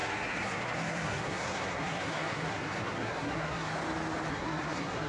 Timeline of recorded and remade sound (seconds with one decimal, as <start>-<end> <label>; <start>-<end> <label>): 0.0-3.7 remade; 3.7-4.3 recorded; 4.3-5.1 remade